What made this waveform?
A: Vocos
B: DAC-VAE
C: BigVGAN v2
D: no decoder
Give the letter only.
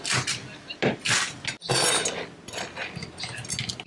D